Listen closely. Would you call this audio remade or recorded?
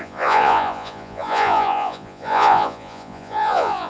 remade